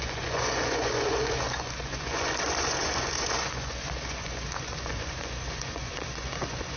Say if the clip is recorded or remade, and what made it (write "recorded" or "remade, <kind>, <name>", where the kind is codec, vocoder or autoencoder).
remade, vocoder, Vocos